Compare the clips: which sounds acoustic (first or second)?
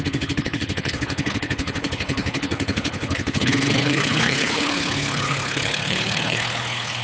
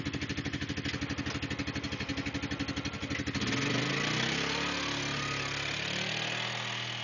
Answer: second